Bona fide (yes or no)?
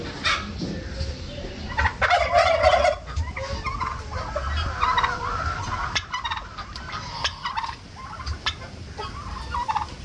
yes